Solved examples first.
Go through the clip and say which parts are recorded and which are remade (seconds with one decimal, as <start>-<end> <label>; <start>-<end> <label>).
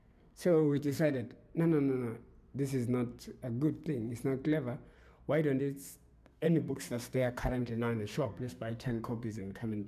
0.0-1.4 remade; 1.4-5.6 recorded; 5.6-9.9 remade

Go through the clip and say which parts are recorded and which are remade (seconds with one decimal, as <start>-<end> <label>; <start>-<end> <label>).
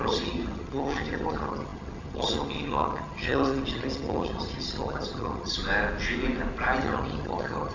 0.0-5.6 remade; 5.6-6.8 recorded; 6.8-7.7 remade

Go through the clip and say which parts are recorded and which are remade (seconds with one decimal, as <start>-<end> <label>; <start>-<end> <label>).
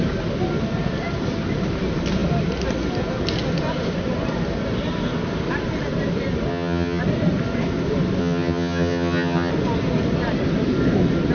0.0-6.5 recorded; 6.5-7.0 remade; 7.0-8.2 recorded; 8.2-9.5 remade; 9.5-11.3 recorded